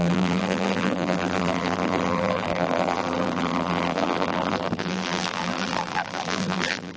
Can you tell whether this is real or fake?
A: fake